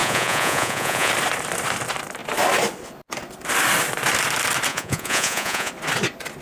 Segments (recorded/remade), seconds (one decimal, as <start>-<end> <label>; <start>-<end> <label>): 0.0-1.1 remade; 1.1-4.7 recorded; 4.7-5.7 remade; 5.7-6.4 recorded